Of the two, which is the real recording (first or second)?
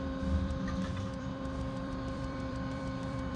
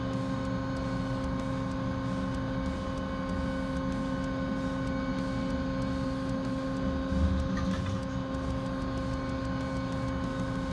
second